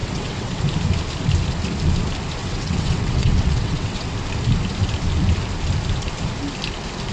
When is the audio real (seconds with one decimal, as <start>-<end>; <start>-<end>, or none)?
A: 0.6-2.4; 4.1-7.1